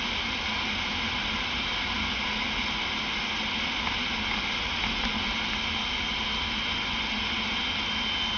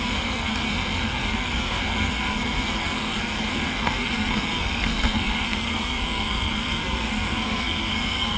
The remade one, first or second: second